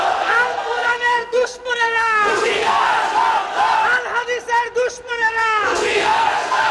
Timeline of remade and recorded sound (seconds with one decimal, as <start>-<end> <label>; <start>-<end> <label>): 0.0-2.9 remade; 2.9-5.1 recorded; 5.1-6.7 remade